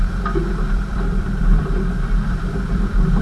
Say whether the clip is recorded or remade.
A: remade